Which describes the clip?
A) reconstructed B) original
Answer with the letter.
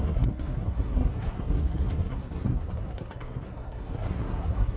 A